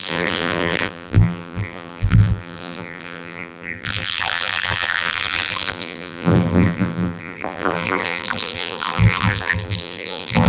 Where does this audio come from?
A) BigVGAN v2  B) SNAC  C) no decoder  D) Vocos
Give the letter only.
A